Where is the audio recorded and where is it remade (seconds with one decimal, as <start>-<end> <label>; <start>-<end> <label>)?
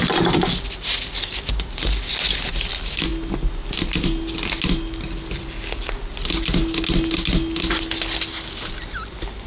0.0-9.5 recorded